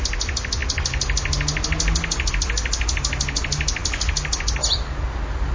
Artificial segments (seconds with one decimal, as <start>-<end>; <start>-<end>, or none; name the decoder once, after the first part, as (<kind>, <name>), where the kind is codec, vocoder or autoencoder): none